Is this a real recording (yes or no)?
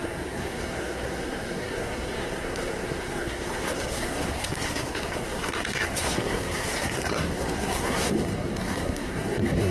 no